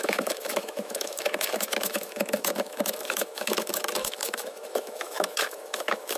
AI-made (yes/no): yes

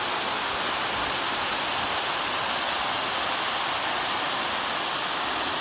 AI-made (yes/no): no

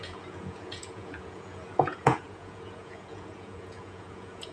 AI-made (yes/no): yes